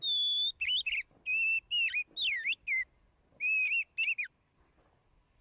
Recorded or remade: recorded